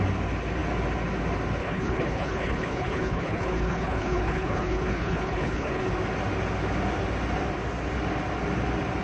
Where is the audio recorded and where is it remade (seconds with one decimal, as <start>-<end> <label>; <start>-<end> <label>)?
0.0-1.6 recorded; 1.6-5.9 remade; 5.9-9.0 recorded